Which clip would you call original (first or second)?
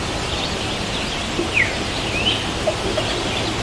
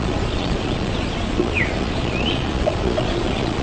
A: first